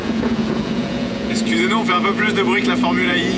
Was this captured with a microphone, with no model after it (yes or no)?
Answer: no